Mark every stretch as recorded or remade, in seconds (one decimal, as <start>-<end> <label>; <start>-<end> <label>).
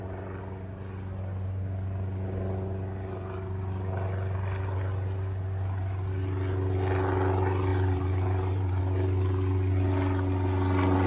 0.0-7.7 recorded; 7.7-8.8 remade; 8.8-11.1 recorded